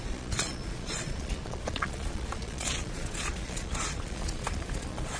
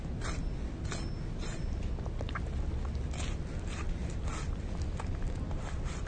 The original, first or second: second